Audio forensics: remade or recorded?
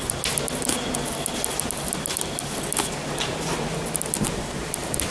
recorded